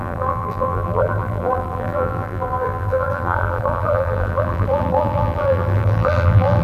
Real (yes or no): no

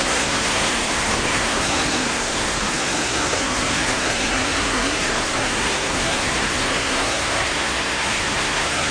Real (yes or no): no